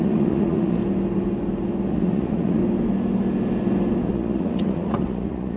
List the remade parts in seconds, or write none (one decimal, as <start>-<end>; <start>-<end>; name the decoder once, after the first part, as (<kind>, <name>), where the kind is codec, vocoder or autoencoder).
0.0-0.8 (vocoder, Vocos); 1.9-2.6; 4.0-5.6